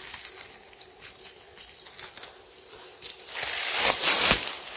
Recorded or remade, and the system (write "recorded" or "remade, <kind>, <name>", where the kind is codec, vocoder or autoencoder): recorded